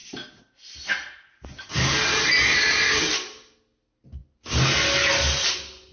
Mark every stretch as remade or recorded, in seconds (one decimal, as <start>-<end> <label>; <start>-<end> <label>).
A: 0.0-5.9 recorded

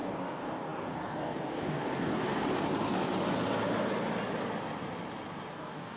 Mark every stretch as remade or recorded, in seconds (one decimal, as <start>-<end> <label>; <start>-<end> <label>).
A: 0.0-2.4 remade; 2.4-5.5 recorded; 5.5-6.0 remade

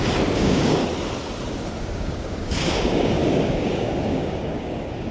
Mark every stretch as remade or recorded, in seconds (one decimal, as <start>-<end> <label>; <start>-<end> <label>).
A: 0.0-0.8 remade; 0.8-1.8 recorded; 1.8-5.1 remade

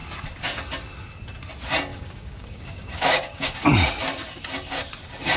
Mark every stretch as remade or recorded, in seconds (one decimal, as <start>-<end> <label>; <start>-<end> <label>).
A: 0.0-1.9 recorded; 1.9-3.7 remade; 3.7-5.4 recorded

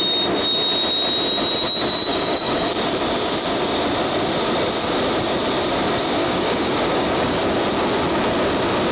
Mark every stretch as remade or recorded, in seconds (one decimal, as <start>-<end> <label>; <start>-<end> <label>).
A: 0.0-2.1 recorded; 2.1-2.7 remade; 2.7-6.2 recorded; 6.2-7.4 remade; 7.4-8.9 recorded

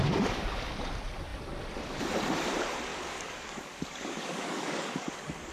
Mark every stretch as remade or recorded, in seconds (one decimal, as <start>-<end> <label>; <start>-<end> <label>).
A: 0.0-0.7 remade; 0.7-2.9 recorded; 2.9-5.5 remade

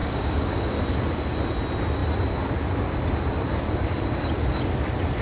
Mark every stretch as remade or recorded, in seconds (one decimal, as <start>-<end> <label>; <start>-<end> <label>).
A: 0.0-0.7 remade; 0.7-5.2 recorded

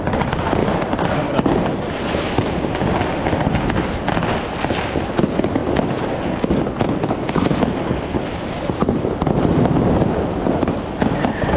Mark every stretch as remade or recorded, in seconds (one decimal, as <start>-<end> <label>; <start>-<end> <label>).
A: 0.0-11.6 recorded